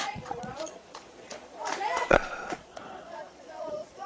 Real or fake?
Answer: fake